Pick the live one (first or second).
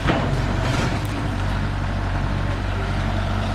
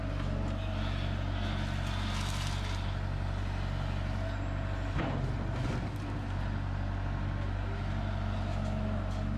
second